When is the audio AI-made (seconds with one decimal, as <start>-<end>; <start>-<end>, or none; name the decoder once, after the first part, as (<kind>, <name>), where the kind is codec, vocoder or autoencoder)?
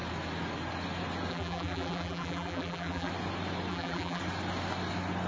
1.3-3.1 (vocoder, BigVGAN v2); 3.7-4.2